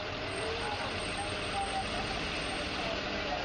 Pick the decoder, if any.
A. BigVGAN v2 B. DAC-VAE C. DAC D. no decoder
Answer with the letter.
D